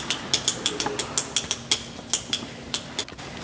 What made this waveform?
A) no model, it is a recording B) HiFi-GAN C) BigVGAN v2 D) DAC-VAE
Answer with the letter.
A